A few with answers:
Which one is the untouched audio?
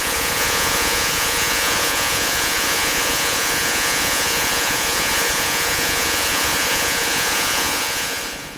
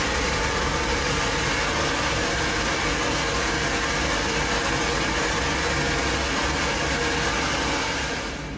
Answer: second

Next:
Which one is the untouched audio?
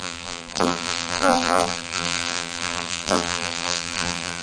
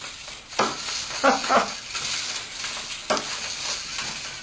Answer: second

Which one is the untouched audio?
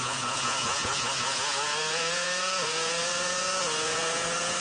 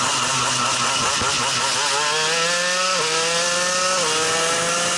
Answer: second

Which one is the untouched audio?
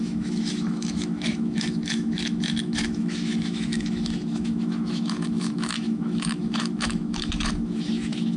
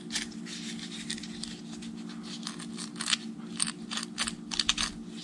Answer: second